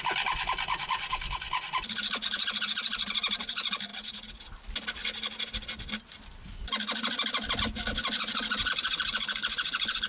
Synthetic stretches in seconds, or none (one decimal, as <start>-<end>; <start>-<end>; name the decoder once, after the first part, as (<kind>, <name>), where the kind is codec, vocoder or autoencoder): none